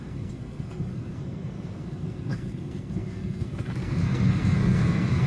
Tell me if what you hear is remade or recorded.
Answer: remade